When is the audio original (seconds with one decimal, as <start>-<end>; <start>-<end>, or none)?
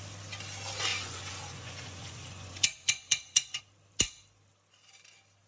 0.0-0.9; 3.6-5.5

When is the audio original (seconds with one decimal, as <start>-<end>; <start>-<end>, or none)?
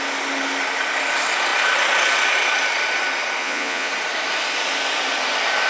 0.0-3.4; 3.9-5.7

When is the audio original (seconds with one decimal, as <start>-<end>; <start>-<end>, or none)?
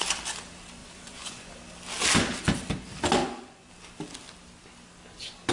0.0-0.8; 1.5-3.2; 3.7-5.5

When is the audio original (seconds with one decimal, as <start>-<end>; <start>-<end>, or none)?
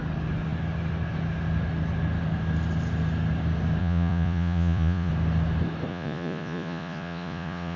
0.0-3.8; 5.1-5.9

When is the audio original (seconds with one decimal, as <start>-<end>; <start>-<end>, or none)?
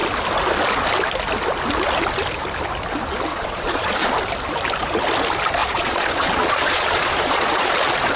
0.0-3.3; 4.1-5.6; 7.7-8.2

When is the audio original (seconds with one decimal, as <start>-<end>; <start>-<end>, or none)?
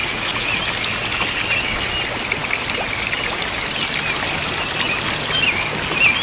0.6-6.2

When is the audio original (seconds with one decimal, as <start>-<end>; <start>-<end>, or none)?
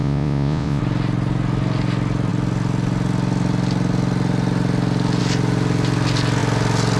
0.8-7.0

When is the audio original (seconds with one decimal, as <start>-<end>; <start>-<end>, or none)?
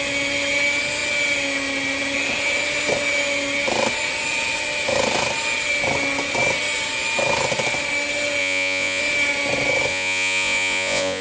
0.0-8.4; 9.0-9.9